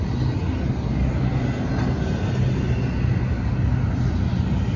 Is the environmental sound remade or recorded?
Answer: recorded